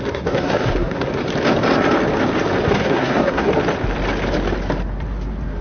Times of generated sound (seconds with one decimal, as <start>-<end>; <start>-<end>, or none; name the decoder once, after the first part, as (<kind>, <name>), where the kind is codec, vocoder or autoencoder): 0.0-1.1 (codec, SNAC); 2.7-3.5